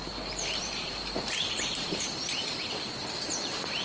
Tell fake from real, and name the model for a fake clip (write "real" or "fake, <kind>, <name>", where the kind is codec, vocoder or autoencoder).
real